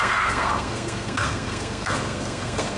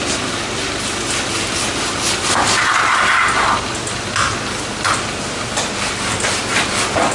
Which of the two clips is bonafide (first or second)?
second